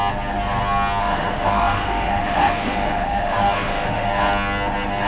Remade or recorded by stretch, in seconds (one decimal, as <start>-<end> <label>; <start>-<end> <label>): 0.0-1.0 recorded; 1.0-4.1 remade; 4.1-5.1 recorded